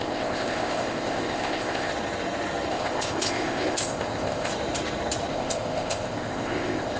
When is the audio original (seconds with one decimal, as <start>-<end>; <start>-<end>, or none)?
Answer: 1.9-2.7; 4.5-5.3